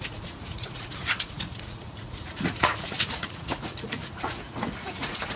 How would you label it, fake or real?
fake